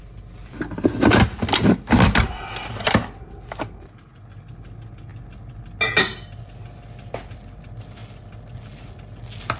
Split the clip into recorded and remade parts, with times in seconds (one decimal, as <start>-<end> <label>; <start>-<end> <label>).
0.0-9.6 recorded